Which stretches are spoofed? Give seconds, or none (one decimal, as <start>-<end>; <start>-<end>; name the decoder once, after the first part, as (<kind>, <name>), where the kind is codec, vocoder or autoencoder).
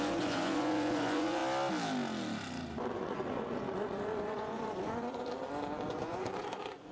0.0-1.4 (vocoder, Vocos); 2.9-5.4; 5.9-6.9